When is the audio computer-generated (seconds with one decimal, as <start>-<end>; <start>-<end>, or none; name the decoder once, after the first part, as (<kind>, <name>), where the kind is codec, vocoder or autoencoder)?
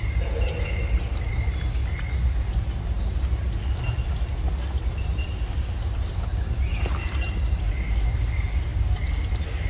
none